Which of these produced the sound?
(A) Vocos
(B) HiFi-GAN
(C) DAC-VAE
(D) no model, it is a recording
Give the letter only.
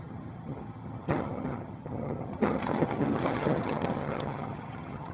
B